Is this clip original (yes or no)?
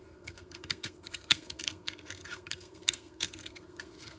no